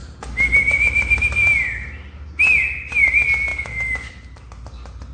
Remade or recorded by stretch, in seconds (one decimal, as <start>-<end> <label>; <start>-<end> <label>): 0.0-5.1 recorded